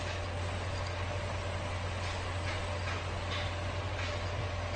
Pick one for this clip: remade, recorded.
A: recorded